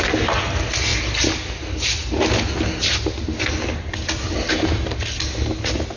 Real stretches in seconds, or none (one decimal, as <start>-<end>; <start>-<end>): 0.0-6.0